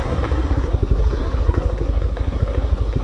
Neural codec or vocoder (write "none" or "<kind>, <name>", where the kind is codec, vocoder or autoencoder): codec, SNAC